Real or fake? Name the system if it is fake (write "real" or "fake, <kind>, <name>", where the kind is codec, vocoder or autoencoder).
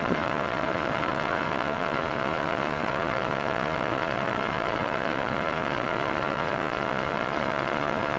fake, vocoder, Vocos